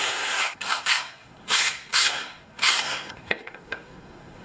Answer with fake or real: fake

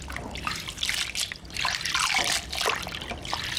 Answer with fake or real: real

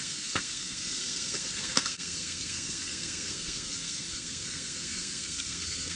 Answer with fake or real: fake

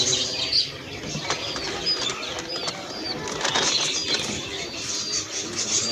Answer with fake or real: real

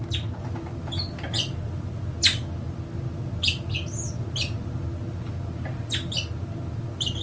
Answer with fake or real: real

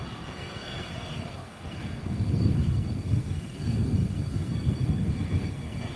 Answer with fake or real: fake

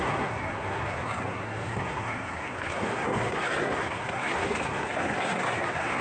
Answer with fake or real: fake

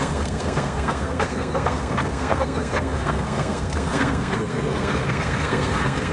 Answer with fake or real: fake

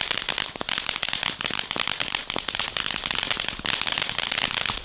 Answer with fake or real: real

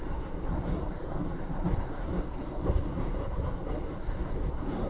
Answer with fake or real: fake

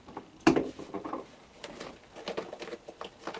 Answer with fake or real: real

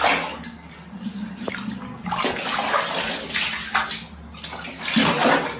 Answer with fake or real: real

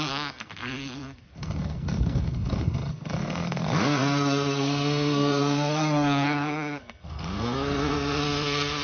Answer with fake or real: fake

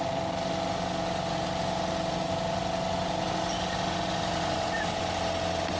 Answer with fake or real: real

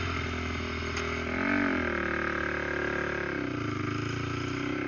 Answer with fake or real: real